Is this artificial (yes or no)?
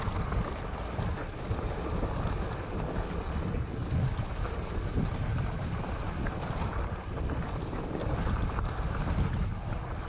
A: no